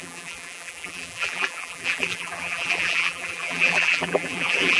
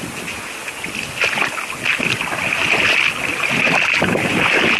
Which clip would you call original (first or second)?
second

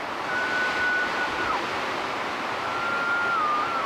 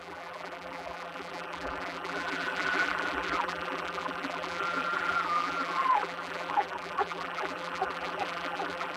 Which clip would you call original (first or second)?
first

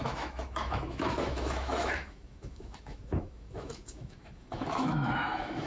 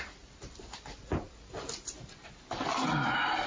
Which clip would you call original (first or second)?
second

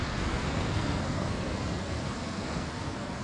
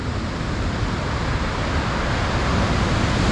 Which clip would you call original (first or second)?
second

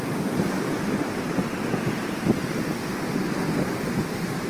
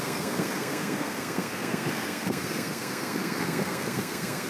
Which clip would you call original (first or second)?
first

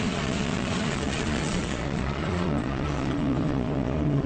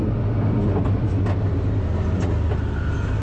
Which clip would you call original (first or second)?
second